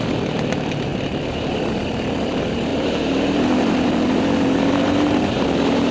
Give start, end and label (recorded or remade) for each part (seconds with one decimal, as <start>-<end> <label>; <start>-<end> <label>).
0.0-2.7 recorded; 2.7-5.4 remade; 5.4-5.9 recorded